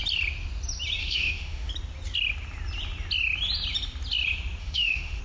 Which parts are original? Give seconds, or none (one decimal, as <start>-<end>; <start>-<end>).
0.0-1.0; 1.7-4.6